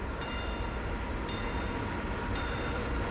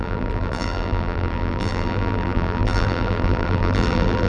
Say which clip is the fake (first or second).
second